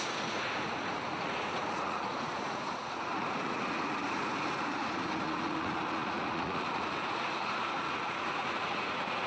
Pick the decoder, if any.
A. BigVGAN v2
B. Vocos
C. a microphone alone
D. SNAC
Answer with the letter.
B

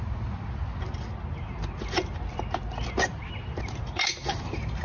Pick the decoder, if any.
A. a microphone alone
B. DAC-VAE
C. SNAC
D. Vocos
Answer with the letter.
A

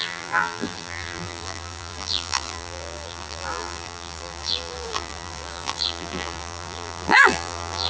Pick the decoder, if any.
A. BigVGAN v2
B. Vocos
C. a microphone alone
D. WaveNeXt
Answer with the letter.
A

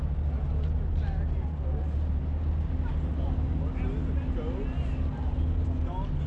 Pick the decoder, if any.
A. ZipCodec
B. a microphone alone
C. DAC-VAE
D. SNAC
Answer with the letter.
B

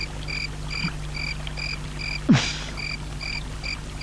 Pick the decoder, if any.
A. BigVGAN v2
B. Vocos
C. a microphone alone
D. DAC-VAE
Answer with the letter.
C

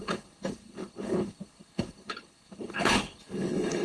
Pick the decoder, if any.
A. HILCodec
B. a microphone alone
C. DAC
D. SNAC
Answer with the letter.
A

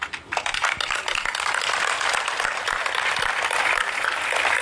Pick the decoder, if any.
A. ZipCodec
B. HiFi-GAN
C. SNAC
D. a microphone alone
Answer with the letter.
D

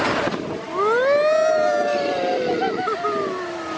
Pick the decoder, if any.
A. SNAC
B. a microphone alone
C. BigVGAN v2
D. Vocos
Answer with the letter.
B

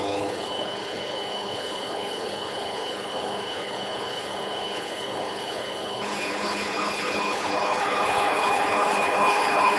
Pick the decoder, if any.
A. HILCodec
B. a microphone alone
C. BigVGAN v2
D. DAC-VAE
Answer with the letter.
A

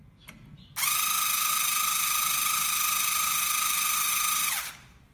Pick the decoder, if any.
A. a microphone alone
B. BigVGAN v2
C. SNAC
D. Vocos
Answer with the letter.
A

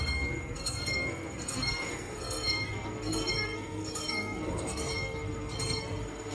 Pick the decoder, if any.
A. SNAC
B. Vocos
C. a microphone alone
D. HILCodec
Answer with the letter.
A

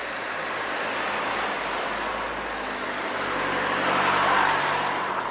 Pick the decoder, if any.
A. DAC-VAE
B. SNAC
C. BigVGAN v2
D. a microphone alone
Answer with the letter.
D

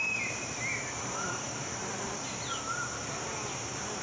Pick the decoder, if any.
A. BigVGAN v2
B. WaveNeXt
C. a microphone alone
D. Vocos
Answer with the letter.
A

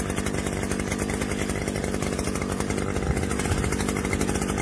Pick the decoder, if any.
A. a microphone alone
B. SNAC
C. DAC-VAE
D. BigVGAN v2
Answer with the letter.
A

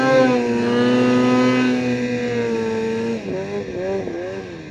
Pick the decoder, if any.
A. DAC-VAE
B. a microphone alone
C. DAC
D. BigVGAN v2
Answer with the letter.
B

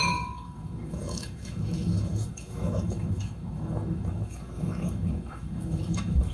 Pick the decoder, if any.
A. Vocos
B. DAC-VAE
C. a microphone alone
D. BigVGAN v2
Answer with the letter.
B